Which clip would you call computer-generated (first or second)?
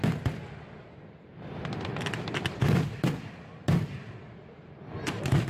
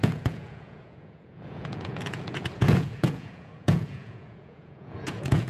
second